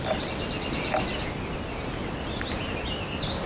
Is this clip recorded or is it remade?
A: recorded